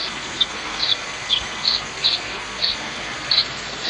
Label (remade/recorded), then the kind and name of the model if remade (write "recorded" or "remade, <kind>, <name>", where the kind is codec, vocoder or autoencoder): remade, codec, SNAC